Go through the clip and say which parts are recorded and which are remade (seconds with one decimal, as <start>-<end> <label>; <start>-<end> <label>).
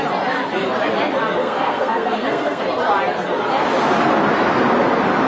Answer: 0.0-1.4 recorded; 1.4-2.6 remade; 2.6-5.3 recorded